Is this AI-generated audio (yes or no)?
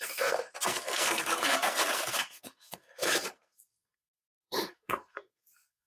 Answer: yes